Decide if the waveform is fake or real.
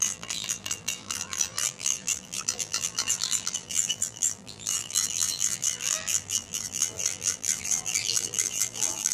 fake